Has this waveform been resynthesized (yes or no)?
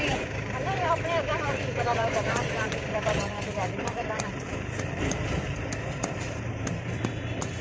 yes